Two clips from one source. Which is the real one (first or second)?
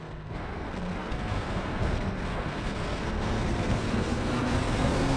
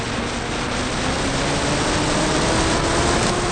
second